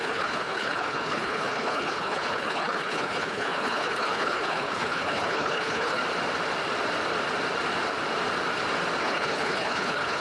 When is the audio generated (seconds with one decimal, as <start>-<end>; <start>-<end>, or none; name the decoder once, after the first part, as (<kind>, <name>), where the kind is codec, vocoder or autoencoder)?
0.0-6.0 (codec, HILCodec); 9.0-10.2